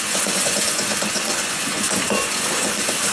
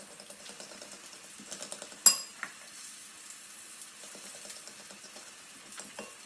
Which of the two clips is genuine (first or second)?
second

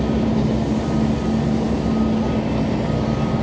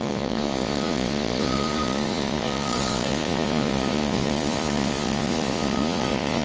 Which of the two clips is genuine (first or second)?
first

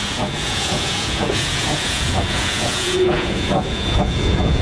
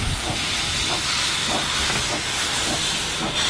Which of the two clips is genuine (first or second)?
second